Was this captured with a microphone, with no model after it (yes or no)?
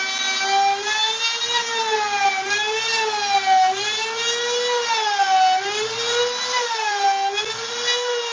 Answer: yes